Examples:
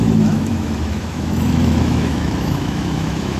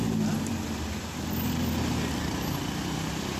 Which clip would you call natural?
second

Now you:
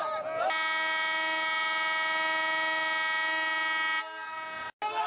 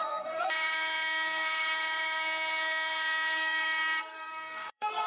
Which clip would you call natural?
first